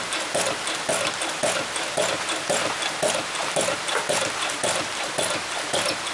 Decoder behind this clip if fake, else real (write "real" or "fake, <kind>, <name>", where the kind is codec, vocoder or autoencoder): real